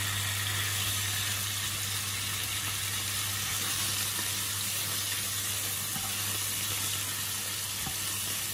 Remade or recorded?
recorded